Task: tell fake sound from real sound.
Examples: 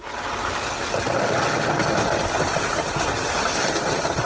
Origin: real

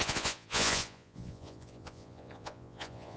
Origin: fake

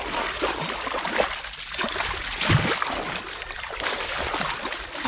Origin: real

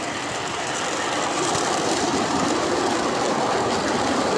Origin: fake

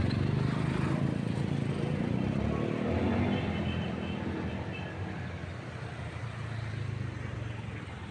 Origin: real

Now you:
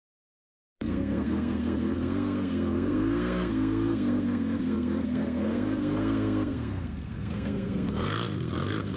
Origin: fake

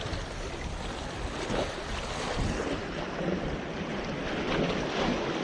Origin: real